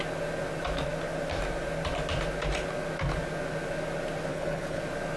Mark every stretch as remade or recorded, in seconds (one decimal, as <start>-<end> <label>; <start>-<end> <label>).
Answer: 0.0-4.3 recorded; 4.3-4.8 remade; 4.8-5.2 recorded